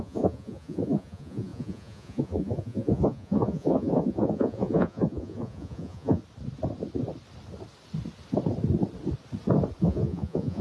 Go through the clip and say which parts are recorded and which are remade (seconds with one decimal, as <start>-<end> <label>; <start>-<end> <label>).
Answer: 0.0-6.2 remade; 6.2-9.8 recorded; 9.8-10.6 remade